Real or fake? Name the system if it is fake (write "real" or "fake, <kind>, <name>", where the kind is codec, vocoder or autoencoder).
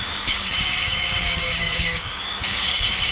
fake, codec, DAC